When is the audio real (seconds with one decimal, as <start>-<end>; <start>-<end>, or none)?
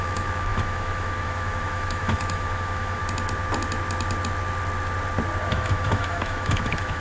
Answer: 3.0-5.5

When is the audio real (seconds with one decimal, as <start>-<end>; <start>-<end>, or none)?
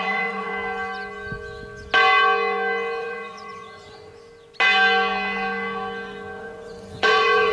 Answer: 0.5-3.0; 4.1-6.4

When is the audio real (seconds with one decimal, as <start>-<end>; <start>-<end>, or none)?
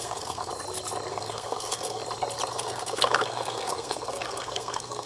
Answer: 0.5-1.1; 2.0-2.5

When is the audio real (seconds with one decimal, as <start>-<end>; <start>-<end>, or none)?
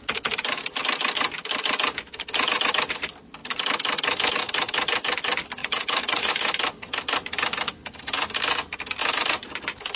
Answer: 0.0-5.6; 6.3-10.0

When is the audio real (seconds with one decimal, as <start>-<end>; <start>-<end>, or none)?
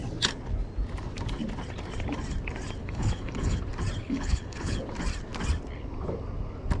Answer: 0.0-2.8; 3.6-4.0; 4.8-6.8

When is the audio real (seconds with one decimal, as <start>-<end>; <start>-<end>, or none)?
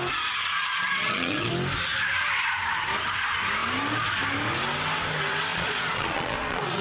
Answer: 0.0-0.9; 1.5-5.5